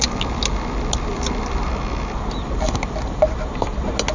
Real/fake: real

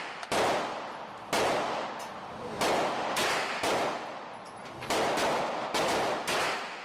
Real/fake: real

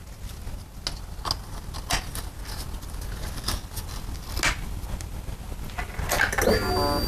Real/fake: real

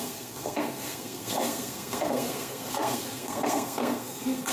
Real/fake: fake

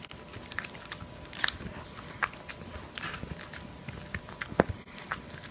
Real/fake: real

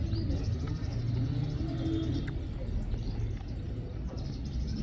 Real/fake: real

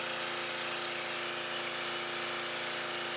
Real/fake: real